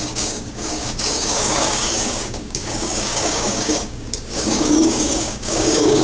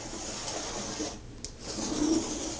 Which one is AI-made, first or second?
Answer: first